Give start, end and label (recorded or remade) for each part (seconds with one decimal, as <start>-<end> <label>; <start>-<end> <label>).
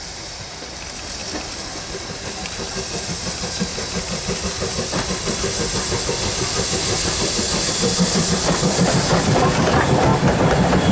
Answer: 0.0-1.2 remade; 1.2-2.1 recorded; 2.1-3.7 remade; 3.7-7.7 recorded; 7.7-10.1 remade; 10.1-10.9 recorded